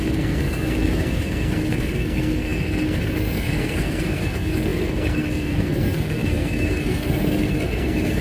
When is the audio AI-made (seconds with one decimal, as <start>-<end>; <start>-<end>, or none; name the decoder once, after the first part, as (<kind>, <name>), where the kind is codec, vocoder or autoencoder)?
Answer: 0.0-8.2 (codec, SNAC)